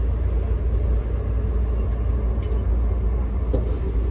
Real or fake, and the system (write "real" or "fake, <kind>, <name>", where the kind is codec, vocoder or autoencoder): real